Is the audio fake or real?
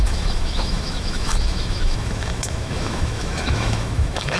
fake